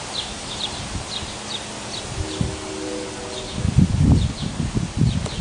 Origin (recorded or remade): recorded